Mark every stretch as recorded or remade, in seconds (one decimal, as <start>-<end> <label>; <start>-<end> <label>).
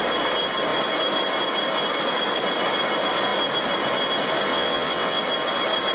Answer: 0.0-4.5 recorded; 4.5-5.2 remade; 5.2-5.9 recorded